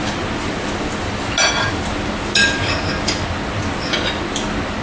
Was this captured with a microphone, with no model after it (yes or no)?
yes